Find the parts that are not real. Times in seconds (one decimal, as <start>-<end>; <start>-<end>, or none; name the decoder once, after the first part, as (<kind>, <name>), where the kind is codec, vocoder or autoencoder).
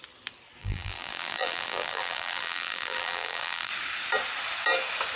0.6-3.7 (vocoder, BigVGAN v2)